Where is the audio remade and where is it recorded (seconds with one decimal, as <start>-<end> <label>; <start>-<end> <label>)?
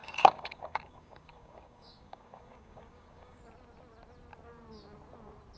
0.0-3.4 remade; 3.4-5.6 recorded